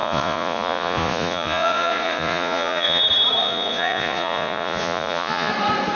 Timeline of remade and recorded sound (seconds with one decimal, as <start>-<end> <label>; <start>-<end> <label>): 0.0-3.0 remade; 3.0-3.4 recorded; 3.4-5.5 remade; 5.5-5.9 recorded